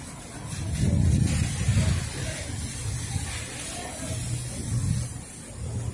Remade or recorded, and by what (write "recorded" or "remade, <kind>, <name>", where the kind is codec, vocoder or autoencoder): recorded